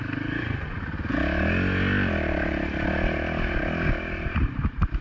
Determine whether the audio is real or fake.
real